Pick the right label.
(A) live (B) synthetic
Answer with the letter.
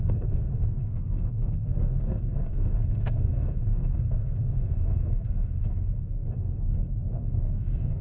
B